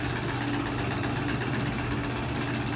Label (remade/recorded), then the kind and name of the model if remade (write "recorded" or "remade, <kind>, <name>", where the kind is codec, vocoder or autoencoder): recorded